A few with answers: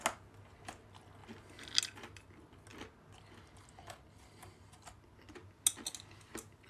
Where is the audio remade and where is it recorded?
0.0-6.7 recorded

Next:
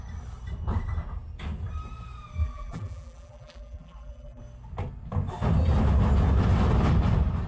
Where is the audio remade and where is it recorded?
0.0-2.4 recorded; 2.4-4.4 remade; 4.4-7.5 recorded

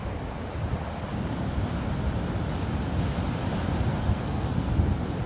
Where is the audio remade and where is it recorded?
0.0-3.9 recorded; 3.9-4.7 remade; 4.7-5.3 recorded